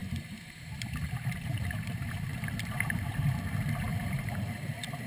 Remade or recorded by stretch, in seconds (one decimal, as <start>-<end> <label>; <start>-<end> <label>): 0.0-3.1 remade; 3.1-3.9 recorded; 3.9-5.1 remade